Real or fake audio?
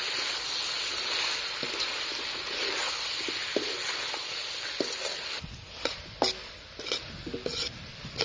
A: real